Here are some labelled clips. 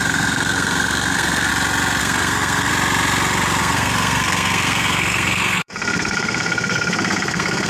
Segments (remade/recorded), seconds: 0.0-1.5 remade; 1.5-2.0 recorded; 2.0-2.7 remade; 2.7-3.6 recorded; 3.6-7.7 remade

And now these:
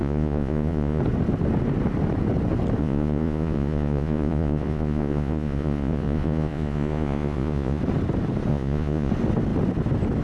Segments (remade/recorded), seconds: 0.0-1.0 remade; 1.0-2.8 recorded; 2.8-7.8 remade; 7.8-8.5 recorded; 8.5-9.1 remade; 9.1-10.2 recorded